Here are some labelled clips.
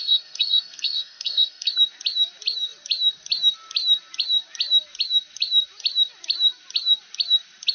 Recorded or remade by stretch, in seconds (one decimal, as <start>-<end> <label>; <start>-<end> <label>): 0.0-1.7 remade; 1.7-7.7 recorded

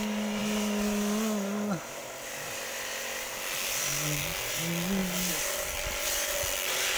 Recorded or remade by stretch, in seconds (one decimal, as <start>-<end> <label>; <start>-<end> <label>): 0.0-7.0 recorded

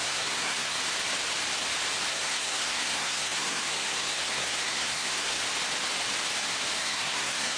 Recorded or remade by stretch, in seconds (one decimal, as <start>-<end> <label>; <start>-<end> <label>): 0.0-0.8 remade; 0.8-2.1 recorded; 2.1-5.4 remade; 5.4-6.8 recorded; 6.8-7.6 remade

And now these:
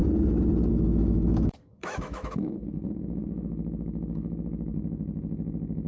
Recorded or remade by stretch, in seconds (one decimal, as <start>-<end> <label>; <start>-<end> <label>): 0.0-0.7 recorded; 0.7-5.9 remade

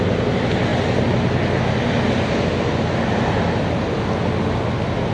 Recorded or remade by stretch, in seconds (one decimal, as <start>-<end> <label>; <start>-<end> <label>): 0.0-5.1 recorded

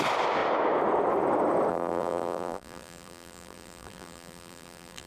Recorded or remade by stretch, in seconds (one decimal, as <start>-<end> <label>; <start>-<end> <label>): 0.0-1.7 recorded; 1.7-5.1 remade

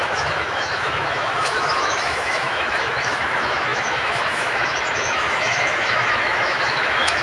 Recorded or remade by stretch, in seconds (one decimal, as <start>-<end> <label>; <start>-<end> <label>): 0.0-7.2 remade